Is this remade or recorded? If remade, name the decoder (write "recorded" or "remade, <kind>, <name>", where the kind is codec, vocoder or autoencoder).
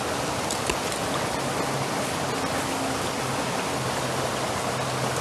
recorded